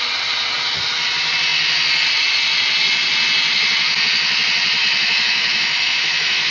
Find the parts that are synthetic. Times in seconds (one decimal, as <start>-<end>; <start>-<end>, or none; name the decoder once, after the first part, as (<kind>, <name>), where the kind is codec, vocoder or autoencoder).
4.8-6.5 (autoencoder, DAC-VAE)